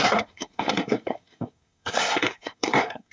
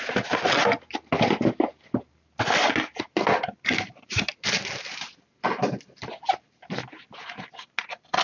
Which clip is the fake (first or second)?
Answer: first